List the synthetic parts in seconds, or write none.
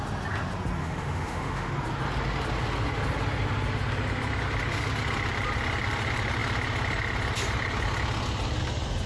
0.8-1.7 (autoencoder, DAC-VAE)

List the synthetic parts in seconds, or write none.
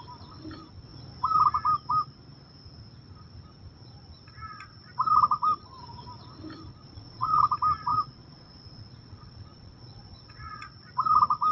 6.7-7.4 (vocoder, Vocos); 7.9-10.7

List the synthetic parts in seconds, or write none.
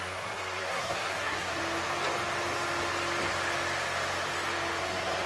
0.0-1.6 (codec, SNAC); 4.8-5.3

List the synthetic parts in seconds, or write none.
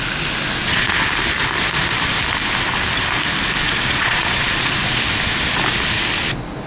0.6-1.1 (vocoder, Vocos); 3.6-5.0